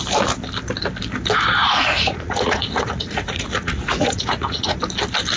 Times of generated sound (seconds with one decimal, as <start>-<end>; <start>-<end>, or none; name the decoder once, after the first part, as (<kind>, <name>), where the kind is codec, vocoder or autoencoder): 1.6-4.8 (vocoder, Vocos)